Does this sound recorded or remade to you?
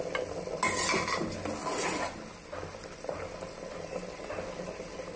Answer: recorded